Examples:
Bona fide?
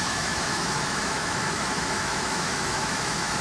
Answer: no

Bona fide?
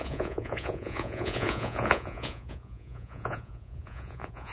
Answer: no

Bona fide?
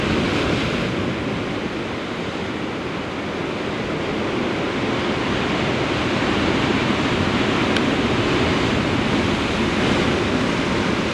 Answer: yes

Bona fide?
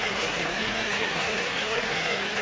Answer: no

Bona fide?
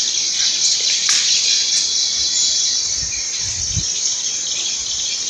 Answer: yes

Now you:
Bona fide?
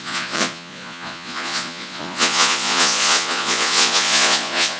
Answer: no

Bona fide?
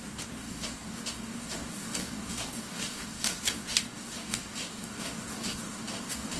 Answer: no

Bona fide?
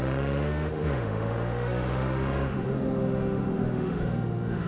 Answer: no